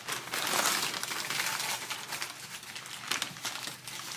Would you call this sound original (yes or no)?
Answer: yes